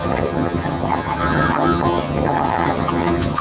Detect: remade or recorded remade